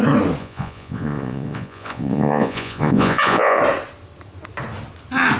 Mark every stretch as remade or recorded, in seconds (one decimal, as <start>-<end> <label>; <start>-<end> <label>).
0.0-0.4 recorded; 0.4-3.6 remade; 3.6-5.4 recorded